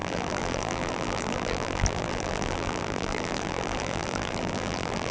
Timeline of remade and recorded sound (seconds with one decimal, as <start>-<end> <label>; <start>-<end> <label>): 0.0-5.1 remade